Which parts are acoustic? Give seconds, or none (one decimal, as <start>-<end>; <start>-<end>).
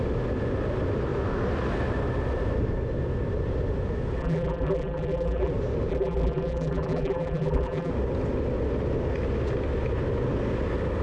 0.0-4.2; 5.5-5.9; 7.9-11.0